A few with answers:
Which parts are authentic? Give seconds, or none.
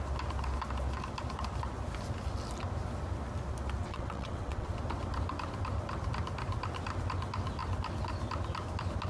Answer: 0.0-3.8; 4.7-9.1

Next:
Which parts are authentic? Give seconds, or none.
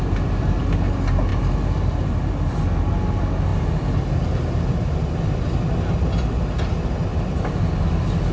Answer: 0.0-8.3